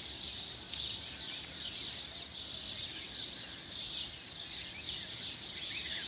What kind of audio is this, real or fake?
real